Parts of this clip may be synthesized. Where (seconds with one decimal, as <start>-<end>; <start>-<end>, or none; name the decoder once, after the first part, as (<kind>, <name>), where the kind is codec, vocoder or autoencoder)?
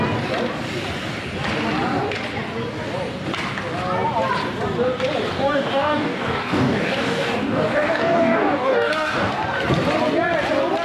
5.3-9.3 (codec, DAC)